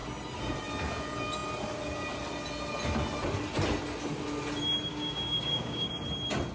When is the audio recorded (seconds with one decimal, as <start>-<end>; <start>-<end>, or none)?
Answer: 0.0-4.9; 5.9-6.5